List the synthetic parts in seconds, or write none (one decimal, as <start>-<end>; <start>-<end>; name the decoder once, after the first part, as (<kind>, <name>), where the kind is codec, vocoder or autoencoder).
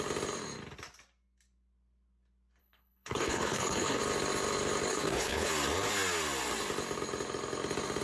2.6-4.0 (codec, HILCodec); 4.9-5.5